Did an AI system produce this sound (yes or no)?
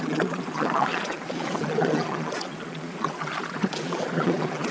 yes